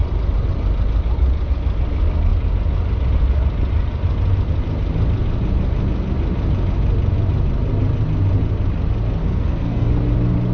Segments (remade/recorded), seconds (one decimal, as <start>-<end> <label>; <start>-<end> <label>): 0.0-9.2 recorded; 9.2-9.9 remade; 9.9-10.5 recorded